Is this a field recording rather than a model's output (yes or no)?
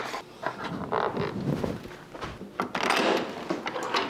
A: yes